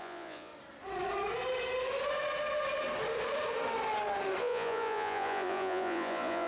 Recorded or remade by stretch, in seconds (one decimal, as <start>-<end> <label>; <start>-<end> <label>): 0.0-0.5 remade; 0.5-4.4 recorded; 4.4-6.5 remade